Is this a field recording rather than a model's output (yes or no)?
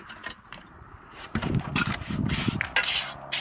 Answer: yes